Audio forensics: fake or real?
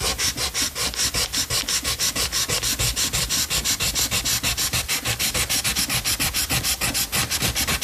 real